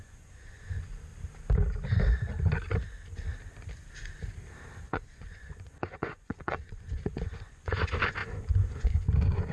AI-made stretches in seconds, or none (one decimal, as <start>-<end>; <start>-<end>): 0.0-1.1; 4.8-9.5

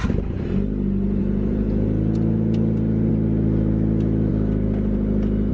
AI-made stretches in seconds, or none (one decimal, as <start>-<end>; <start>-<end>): 1.2-3.1

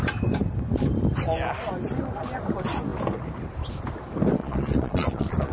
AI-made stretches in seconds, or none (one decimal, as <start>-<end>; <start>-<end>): 4.4-5.5

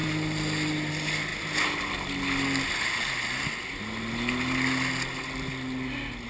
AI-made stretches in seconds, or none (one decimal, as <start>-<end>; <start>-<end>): none

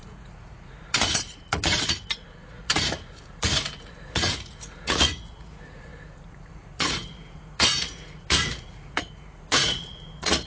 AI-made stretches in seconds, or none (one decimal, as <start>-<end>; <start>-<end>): 0.0-10.5

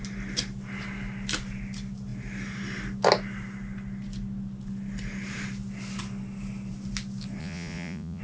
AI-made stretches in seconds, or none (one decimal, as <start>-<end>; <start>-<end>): 7.4-8.2

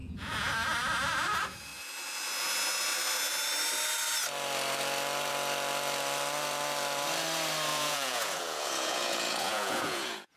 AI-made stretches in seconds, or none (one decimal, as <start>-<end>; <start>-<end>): 0.0-0.5; 7.7-10.4